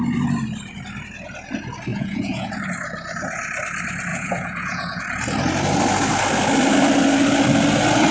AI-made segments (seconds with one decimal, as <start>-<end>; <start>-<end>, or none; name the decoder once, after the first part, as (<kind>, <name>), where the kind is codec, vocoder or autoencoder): 1.9-2.5 (vocoder, Vocos); 4.1-5.0